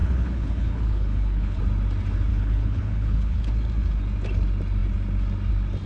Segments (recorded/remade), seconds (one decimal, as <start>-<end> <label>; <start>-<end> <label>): 0.0-1.6 remade; 1.6-2.3 recorded; 2.3-3.5 remade; 3.5-5.9 recorded